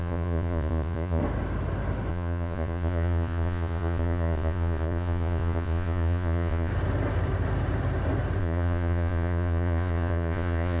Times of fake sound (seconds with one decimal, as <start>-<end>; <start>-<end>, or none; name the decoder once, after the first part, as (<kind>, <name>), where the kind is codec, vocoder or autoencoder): 0.0-1.2 (vocoder, Vocos); 2.1-6.7; 8.4-10.8

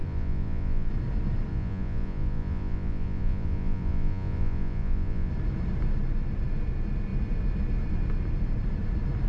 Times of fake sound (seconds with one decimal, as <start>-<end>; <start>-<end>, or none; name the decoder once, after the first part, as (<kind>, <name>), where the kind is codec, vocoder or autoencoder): 0.0-0.9 (vocoder, Vocos); 1.5-5.3

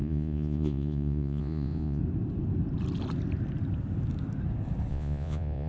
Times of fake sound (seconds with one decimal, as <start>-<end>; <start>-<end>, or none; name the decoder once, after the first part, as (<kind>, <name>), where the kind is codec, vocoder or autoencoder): 0.0-2.0 (vocoder, Vocos); 4.9-5.7

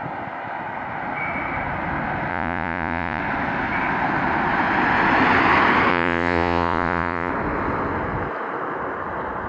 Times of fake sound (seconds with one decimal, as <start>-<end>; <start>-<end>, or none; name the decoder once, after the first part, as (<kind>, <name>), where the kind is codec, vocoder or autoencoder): 2.3-3.2 (vocoder, Vocos); 5.9-7.3

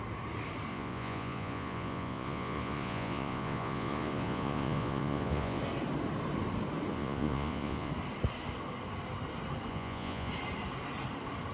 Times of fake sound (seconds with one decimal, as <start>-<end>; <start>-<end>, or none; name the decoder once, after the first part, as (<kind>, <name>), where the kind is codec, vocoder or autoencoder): 0.7-5.6 (vocoder, Vocos); 6.9-7.9; 9.7-10.3